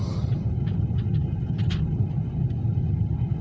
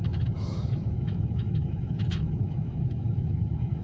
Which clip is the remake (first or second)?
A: second